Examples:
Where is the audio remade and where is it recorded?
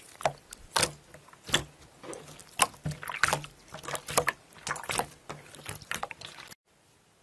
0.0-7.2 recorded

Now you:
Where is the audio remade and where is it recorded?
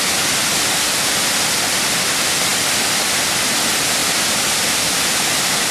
0.0-2.5 recorded; 2.5-3.2 remade; 3.2-5.7 recorded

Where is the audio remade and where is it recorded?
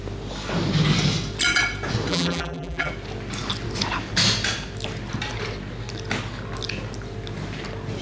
0.0-2.1 recorded; 2.1-2.9 remade; 2.9-8.0 recorded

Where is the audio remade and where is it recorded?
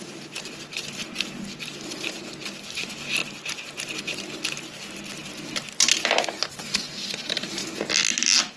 0.0-3.2 remade; 3.2-6.2 recorded; 6.2-7.6 remade; 7.6-8.6 recorded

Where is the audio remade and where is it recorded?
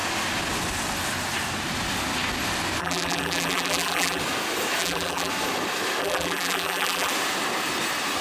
0.0-2.8 recorded; 2.8-4.2 remade; 4.2-4.8 recorded; 4.8-5.3 remade; 5.3-6.0 recorded; 6.0-7.1 remade; 7.1-8.2 recorded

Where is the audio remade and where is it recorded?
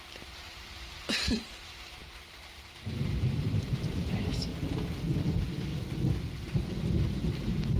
0.0-4.5 remade; 4.5-5.2 recorded; 5.2-5.7 remade; 5.7-6.3 recorded; 6.3-7.8 remade